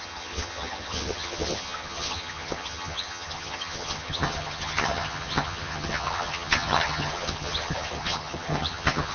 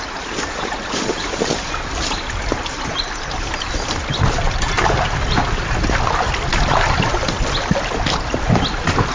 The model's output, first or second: first